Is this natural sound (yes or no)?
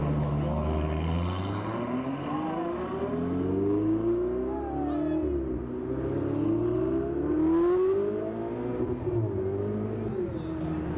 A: yes